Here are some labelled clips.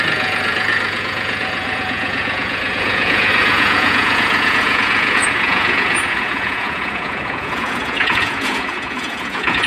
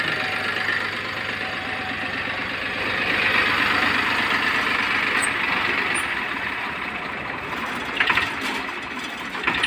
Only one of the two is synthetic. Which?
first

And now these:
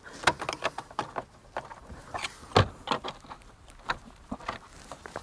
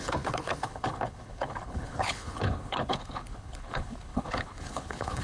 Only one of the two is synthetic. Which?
second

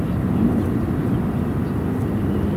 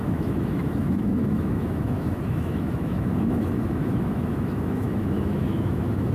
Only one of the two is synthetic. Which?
second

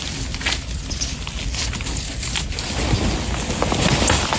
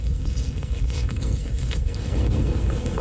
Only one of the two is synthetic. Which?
second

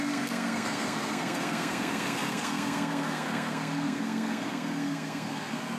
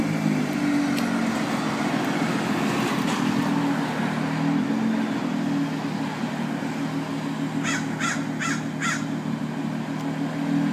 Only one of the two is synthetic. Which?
first